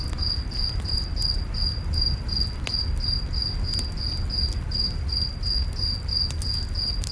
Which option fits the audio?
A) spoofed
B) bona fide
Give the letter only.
B